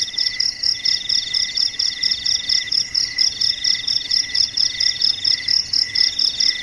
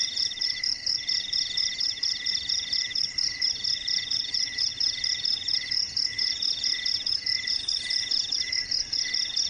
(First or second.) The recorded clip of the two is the first